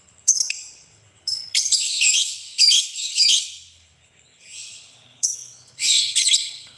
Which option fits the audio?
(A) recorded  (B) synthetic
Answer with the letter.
B